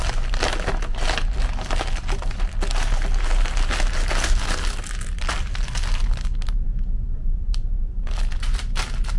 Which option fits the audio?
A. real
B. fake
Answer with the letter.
A